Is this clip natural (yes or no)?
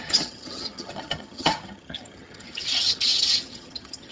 no